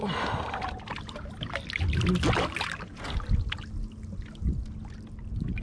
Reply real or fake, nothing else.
real